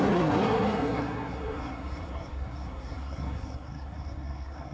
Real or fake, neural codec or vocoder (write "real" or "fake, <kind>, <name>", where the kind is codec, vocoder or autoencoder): fake, codec, SNAC